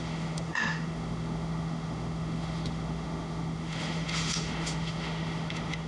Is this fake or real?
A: fake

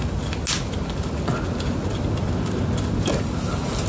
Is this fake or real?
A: real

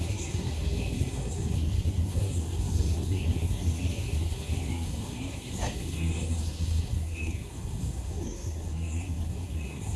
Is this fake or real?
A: fake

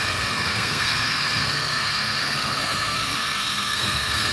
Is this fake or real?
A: fake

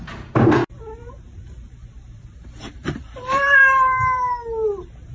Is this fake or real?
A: fake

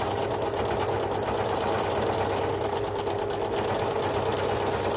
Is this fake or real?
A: real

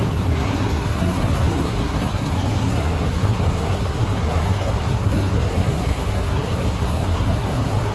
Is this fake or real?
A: fake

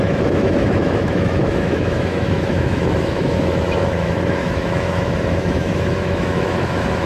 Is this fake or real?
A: fake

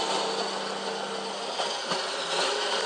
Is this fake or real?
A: real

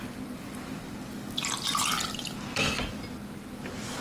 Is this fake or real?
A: real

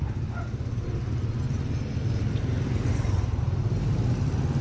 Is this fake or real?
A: real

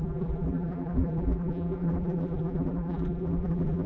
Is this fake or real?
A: fake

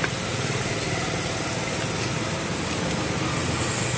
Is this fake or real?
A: real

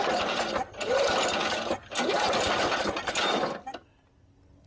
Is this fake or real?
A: real